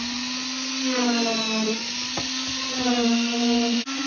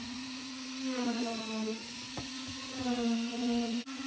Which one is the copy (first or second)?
second